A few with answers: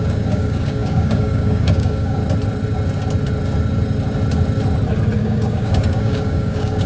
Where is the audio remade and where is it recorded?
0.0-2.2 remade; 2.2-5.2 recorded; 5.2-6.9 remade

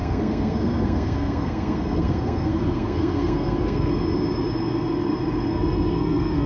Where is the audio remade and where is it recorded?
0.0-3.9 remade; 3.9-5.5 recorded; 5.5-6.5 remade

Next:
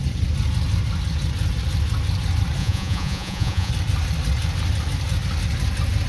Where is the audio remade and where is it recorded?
0.0-2.6 recorded; 2.6-3.7 remade; 3.7-6.1 recorded

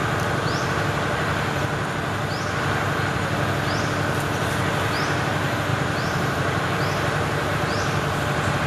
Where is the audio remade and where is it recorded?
0.0-5.7 recorded; 5.7-7.5 remade; 7.5-8.7 recorded